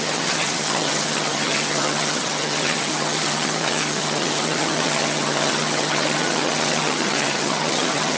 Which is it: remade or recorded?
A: remade